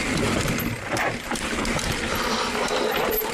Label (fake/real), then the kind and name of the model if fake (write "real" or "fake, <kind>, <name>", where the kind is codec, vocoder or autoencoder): real